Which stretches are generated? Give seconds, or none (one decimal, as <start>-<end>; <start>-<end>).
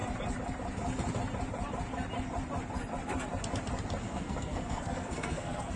4.0-5.8